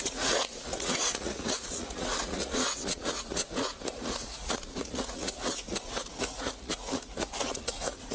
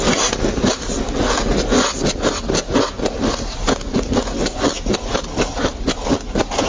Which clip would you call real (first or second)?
second